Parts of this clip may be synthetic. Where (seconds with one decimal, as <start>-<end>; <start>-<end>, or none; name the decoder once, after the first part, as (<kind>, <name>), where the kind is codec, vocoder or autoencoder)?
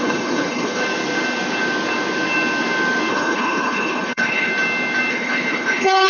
0.0-0.8 (codec, HILCodec); 3.1-4.5; 5.1-6.1